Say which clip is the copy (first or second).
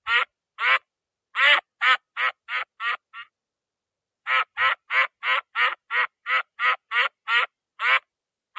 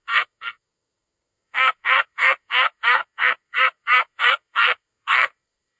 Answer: second